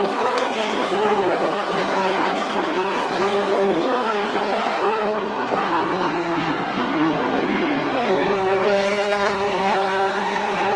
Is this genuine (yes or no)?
no